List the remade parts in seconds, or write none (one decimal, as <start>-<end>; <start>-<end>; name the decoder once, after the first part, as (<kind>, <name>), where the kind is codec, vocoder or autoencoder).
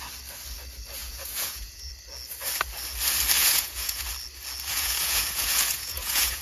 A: 1.0-1.9 (vocoder, Vocos); 3.4-4.0; 4.7-6.4